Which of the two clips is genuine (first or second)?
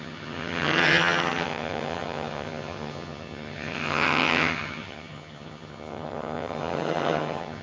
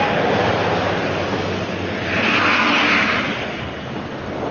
second